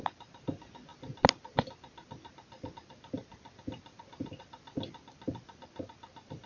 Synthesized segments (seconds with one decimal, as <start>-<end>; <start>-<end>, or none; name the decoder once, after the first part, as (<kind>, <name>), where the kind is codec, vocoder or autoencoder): none